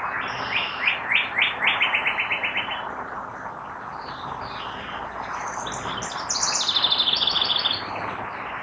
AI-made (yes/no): no